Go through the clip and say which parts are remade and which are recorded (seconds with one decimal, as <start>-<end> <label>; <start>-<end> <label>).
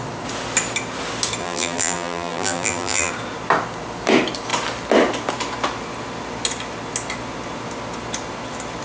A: 0.0-1.4 recorded; 1.4-3.1 remade; 3.1-8.8 recorded